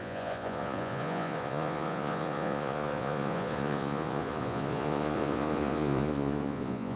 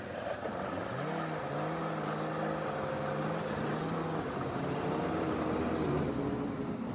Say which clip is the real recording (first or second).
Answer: second